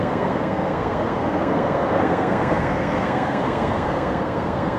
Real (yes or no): no